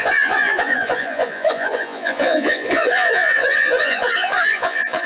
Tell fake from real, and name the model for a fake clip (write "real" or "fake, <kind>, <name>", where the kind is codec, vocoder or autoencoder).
fake, vocoder, Vocos